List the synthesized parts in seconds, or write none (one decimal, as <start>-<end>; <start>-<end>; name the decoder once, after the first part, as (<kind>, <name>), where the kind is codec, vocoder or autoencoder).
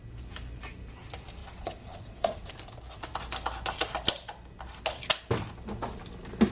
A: 1.4-2.5 (vocoder, Vocos)